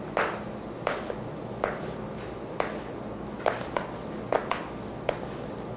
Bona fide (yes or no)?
yes